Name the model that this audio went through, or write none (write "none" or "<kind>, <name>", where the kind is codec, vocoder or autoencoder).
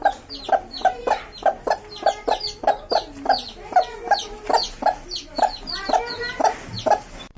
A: none